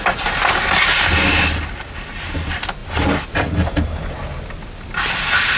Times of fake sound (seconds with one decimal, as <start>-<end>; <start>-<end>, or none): none